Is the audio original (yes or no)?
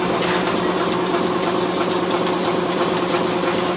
yes